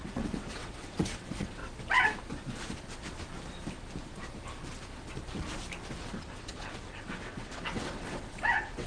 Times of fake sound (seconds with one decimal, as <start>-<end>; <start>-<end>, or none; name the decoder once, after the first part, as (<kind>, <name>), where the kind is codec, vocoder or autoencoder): 0.0-1.6 (vocoder, WaveNeXt); 6.0-8.9